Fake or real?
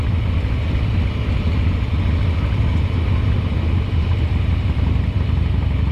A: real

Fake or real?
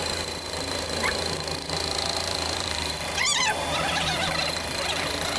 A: fake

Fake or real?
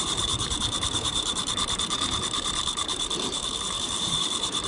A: fake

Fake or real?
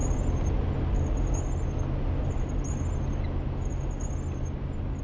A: real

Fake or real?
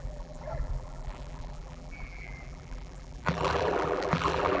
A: fake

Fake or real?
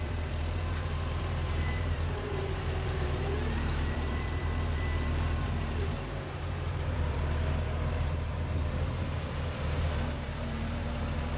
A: fake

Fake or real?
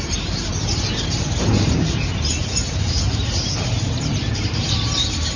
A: fake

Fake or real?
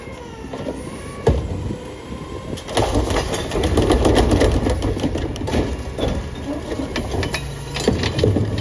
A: real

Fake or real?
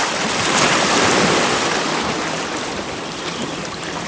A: fake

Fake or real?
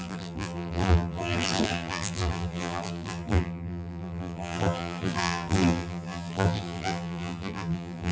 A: fake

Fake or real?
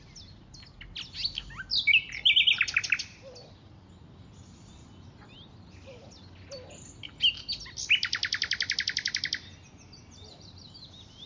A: real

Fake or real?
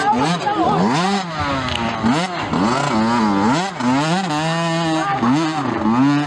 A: real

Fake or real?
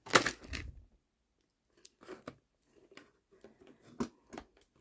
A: real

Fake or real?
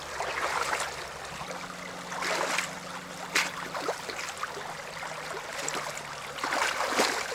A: real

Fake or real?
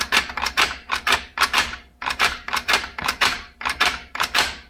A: fake